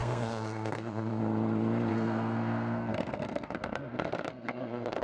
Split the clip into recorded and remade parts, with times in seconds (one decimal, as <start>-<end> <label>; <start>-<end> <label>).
0.0-1.2 remade; 1.2-1.9 recorded; 1.9-5.0 remade

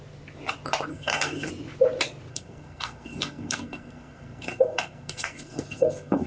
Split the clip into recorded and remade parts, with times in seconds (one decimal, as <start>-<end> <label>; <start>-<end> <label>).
0.0-0.9 recorded; 0.9-1.5 remade; 1.5-2.3 recorded; 2.3-6.3 remade

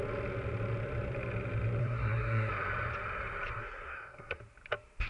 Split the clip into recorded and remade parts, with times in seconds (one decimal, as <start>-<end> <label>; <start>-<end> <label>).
0.0-1.8 recorded; 1.8-2.5 remade; 2.5-3.6 recorded; 3.6-4.4 remade; 4.4-5.1 recorded

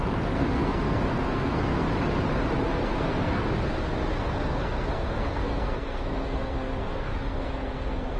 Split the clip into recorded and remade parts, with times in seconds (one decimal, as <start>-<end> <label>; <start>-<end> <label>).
0.0-1.9 remade; 1.9-2.7 recorded; 2.7-3.4 remade; 3.4-4.1 recorded; 4.1-8.2 remade

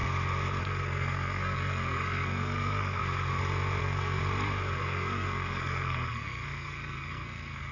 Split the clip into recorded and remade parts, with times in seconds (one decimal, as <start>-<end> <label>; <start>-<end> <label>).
0.0-0.6 recorded; 0.6-3.0 remade; 3.0-3.8 recorded; 3.8-4.2 remade; 4.2-4.8 recorded; 4.8-7.7 remade